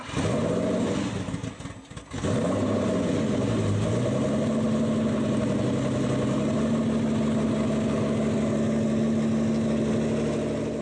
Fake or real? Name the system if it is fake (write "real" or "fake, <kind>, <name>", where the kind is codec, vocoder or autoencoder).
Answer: real